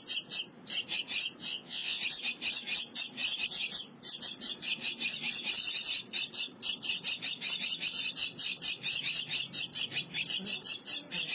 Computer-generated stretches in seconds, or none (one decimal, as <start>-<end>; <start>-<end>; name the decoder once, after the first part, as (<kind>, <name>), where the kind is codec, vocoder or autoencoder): 1.5-2.0 (vocoder, Vocos)